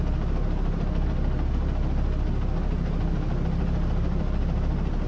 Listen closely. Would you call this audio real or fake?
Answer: real